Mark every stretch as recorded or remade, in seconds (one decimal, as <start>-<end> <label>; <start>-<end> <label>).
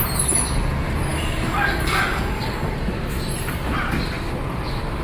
0.0-1.1 recorded; 1.1-2.7 remade; 2.7-5.0 recorded